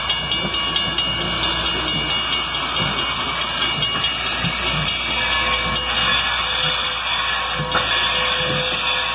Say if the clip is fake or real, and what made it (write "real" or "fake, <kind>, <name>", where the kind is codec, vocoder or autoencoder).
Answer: real